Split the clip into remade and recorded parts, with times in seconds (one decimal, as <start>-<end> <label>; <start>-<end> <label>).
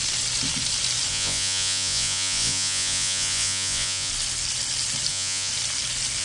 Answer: 0.0-1.1 recorded; 1.1-4.1 remade; 4.1-5.1 recorded; 5.1-5.5 remade; 5.5-6.2 recorded